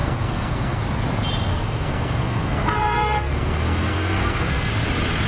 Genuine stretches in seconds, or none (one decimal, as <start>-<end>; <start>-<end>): 0.8-1.5; 4.7-5.3